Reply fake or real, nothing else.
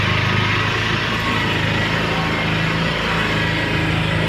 real